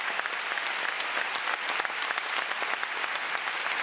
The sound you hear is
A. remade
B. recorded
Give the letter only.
B